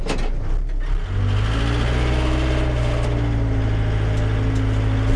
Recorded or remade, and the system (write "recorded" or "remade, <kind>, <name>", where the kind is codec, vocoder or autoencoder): recorded